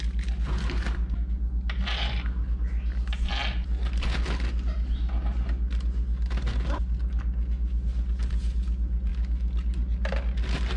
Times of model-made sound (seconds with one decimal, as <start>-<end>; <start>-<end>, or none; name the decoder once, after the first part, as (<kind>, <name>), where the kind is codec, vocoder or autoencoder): none